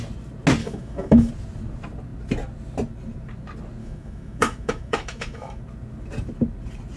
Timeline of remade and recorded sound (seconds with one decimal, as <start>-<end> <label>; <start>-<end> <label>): 0.0-0.6 recorded; 0.6-1.3 remade; 1.3-3.8 recorded; 3.8-5.6 remade; 5.6-7.0 recorded